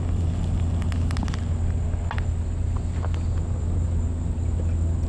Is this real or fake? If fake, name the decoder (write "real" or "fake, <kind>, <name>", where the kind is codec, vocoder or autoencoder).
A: real